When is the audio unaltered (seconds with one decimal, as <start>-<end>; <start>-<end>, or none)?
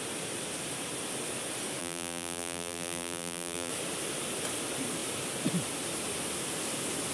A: 0.0-1.8; 3.7-7.1